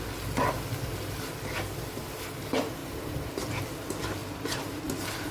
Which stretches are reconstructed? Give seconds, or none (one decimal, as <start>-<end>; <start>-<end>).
2.8-3.3; 4.2-4.8